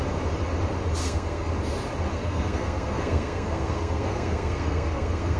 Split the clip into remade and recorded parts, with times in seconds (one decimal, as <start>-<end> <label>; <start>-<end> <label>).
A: 0.0-1.0 recorded; 1.0-1.5 remade; 1.5-2.1 recorded; 2.1-5.4 remade